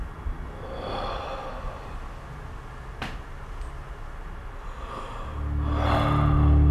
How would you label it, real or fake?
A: real